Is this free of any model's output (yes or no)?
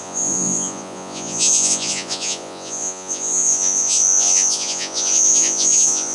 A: no